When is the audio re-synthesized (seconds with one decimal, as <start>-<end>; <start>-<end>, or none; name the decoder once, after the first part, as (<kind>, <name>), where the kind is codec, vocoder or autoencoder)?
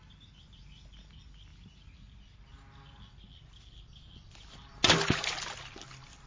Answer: none